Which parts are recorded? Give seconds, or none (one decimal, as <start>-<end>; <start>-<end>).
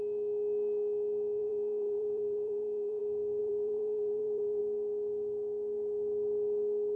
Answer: 0.0-1.4; 3.0-3.4; 4.6-7.0